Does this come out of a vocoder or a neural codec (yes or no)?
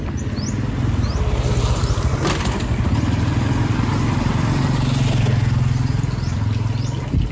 no